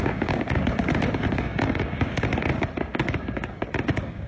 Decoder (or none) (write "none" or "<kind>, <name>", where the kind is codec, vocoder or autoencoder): codec, DAC